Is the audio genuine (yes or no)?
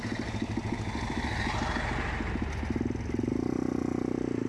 yes